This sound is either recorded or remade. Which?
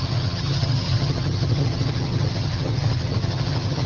remade